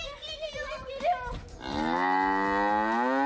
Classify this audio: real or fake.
real